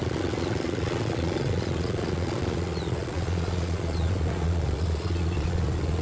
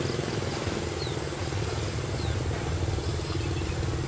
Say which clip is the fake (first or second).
first